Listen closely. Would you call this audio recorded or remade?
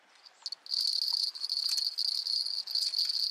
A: recorded